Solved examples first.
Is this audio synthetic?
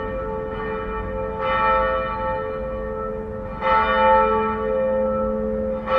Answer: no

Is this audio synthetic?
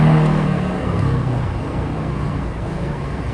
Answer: yes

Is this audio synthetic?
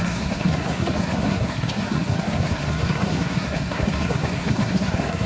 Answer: yes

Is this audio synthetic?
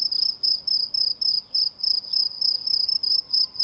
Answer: no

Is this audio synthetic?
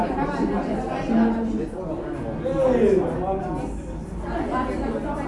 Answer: no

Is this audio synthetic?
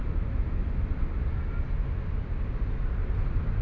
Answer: no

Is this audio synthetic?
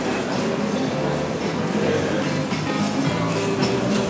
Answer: no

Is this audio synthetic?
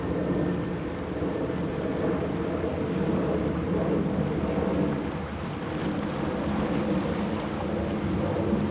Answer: no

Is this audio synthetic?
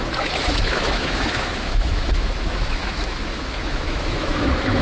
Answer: yes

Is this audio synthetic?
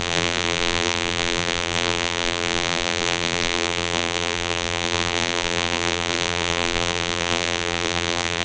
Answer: yes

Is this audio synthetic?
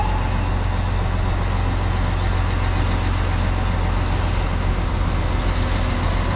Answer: no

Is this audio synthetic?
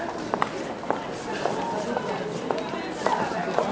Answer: no